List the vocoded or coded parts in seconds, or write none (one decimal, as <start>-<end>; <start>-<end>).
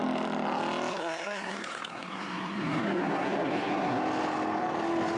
0.9-4.0